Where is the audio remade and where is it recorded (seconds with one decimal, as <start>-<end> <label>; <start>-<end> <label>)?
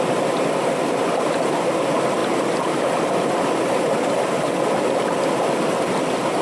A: 0.0-6.4 recorded